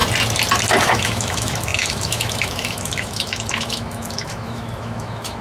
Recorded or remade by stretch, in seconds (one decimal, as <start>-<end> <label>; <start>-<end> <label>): 0.0-0.8 recorded; 0.8-5.4 remade